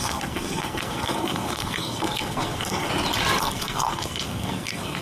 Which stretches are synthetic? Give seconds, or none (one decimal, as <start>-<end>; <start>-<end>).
0.0-2.9; 3.4-5.0